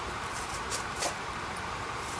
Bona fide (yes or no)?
no